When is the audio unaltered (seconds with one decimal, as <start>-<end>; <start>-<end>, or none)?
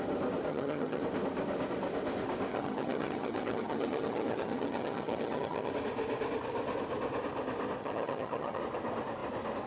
0.0-0.5; 1.0-2.5; 5.7-7.8; 8.6-9.7